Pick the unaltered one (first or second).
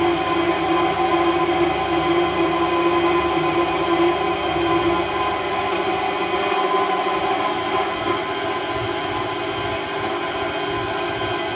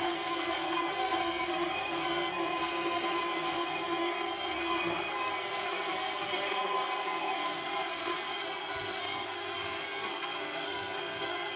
first